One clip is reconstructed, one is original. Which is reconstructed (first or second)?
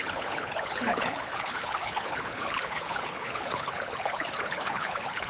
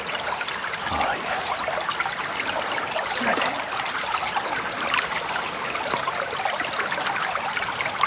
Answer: first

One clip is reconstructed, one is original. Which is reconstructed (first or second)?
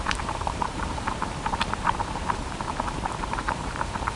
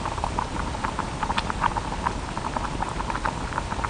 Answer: first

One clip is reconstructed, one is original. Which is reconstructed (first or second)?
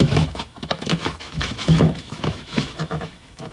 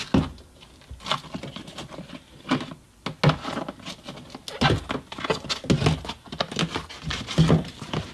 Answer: first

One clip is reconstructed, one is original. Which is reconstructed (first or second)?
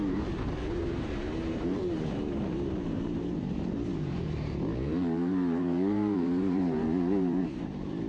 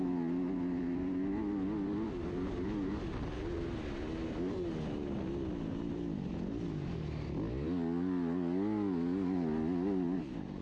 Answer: first